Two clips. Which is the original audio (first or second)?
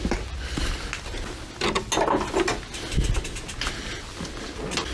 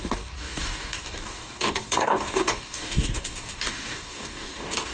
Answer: first